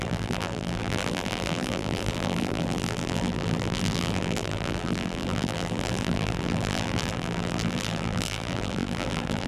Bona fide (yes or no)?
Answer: no